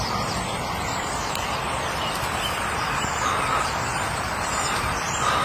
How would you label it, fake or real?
real